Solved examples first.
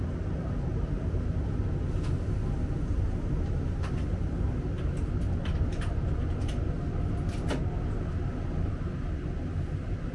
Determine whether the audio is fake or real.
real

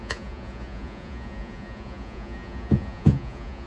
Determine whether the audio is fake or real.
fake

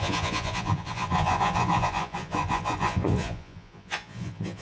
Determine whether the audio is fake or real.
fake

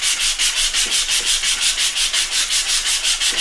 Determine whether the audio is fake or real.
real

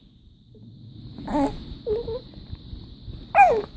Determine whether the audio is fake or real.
real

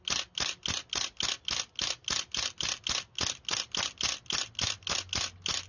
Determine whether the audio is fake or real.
real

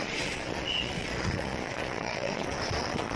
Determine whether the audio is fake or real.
fake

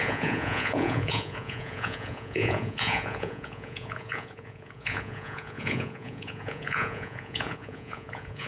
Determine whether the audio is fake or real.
fake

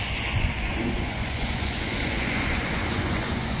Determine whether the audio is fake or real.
fake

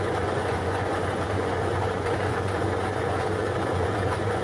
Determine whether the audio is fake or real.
fake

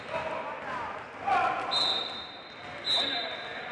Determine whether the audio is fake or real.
real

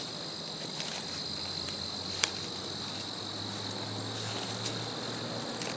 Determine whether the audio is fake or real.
real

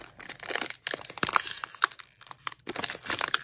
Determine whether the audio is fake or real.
real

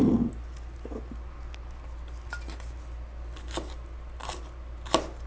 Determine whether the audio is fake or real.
real